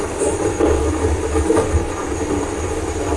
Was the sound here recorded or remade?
recorded